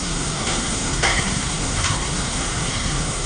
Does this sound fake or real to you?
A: fake